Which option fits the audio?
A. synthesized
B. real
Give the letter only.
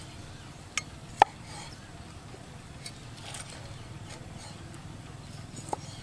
B